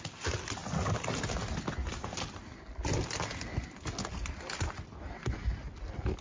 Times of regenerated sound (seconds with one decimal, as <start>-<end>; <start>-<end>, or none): none